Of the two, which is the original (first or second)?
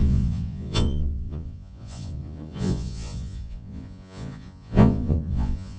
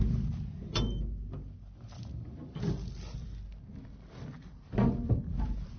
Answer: second